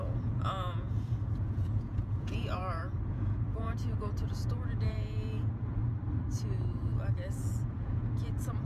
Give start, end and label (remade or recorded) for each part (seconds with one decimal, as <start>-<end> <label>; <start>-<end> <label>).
0.0-5.8 remade; 5.8-7.3 recorded; 7.3-8.7 remade